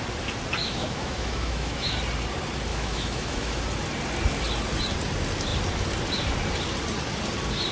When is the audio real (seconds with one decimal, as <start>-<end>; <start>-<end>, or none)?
0.0-0.6; 1.9-2.7; 3.6-7.7